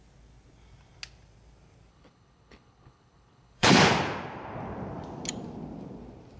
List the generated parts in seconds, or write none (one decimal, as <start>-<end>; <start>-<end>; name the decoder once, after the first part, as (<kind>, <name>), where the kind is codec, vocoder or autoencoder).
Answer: 1.9-3.8 (codec, HILCodec)